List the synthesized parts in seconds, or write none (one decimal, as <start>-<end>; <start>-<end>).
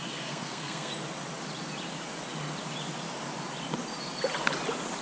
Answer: 0.0-0.9